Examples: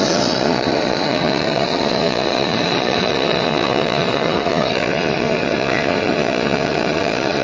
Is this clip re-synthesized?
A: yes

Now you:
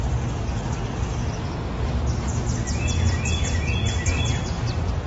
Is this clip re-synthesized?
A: no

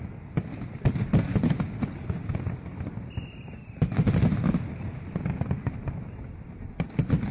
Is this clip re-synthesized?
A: no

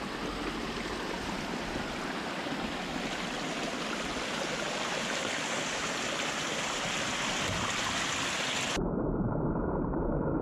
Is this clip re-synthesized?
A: no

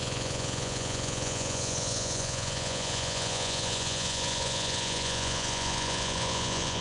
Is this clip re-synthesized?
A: yes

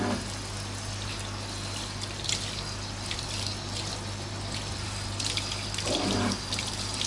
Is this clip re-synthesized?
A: no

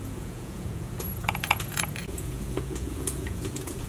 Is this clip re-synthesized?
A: yes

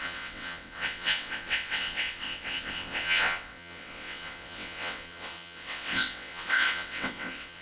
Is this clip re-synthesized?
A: yes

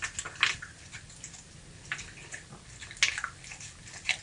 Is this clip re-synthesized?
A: no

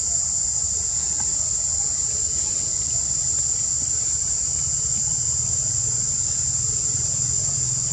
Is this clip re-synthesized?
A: no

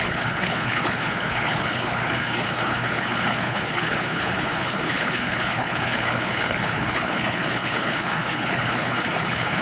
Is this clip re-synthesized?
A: yes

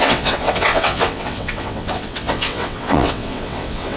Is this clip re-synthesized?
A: yes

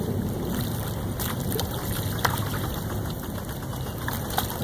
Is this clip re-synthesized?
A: yes